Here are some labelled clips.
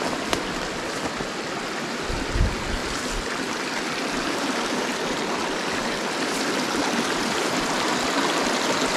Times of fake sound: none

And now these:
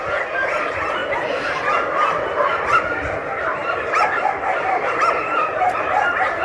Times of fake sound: none